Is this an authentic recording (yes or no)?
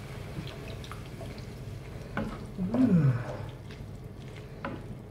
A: yes